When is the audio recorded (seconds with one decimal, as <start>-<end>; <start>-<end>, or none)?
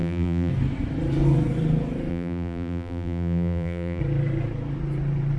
0.5-2.1; 4.0-5.4